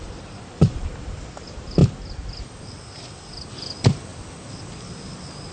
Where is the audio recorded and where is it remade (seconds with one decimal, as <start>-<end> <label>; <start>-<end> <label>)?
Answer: 0.0-5.5 recorded